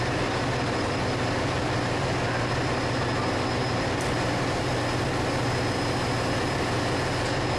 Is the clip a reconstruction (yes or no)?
no